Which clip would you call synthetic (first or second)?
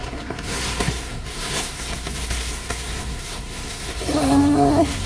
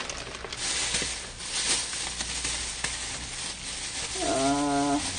first